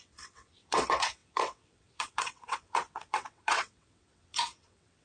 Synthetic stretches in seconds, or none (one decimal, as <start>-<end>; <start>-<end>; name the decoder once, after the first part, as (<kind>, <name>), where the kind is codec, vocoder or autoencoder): 0.0-5.0 (vocoder, WaveNeXt)